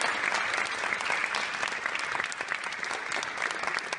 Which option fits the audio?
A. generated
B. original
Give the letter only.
B